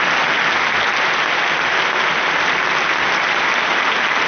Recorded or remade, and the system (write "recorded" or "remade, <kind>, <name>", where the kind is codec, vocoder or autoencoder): recorded